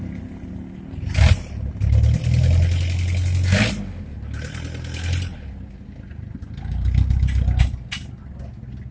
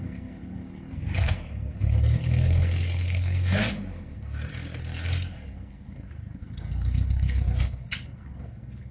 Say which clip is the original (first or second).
first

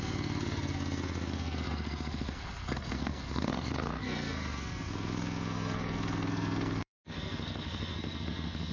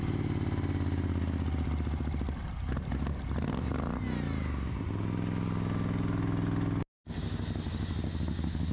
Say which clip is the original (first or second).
second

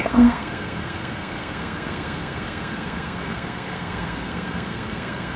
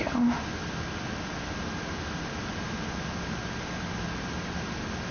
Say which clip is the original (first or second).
second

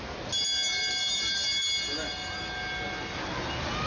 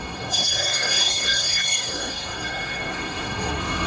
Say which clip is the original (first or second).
first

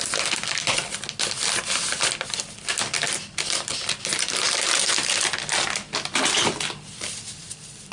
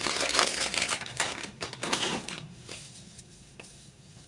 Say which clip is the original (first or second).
first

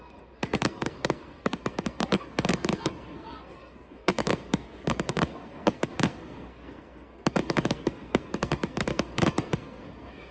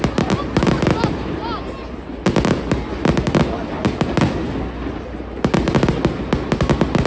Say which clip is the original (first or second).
second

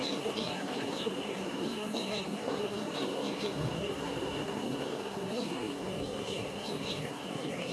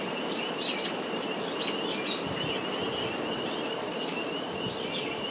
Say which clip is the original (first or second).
second